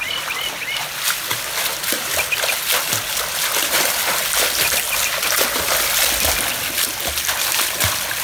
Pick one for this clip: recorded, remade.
recorded